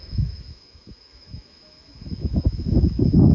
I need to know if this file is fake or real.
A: fake